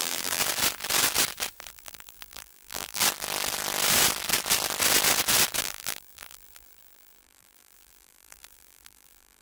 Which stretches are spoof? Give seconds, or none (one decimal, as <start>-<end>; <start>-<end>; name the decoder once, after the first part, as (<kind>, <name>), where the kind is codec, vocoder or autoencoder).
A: 0.0-0.4 (vocoder, BigVGAN v2); 1.7-3.0; 5.6-9.4

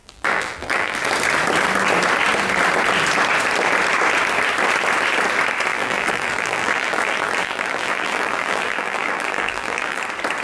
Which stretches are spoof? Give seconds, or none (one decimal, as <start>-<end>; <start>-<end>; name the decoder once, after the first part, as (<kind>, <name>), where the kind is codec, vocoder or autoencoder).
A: 0.0-1.0 (vocoder, BigVGAN v2); 5.7-10.0